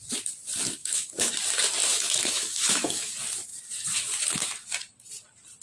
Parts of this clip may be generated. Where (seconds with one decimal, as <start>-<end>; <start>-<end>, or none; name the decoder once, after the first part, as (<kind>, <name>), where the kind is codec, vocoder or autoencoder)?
0.8-1.3 (autoencoder, DAC-VAE); 1.9-3.1